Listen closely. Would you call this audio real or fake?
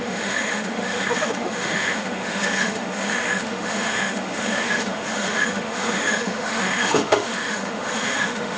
fake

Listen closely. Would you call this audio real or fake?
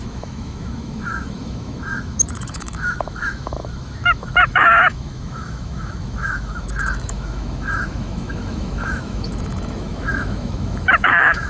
fake